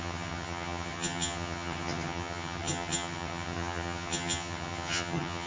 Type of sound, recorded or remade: remade